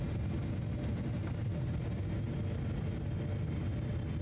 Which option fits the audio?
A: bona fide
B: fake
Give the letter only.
A